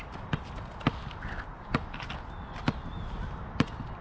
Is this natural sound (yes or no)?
yes